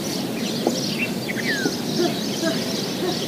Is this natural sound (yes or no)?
yes